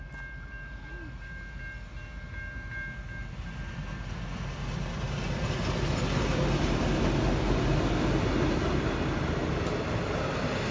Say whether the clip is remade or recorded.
recorded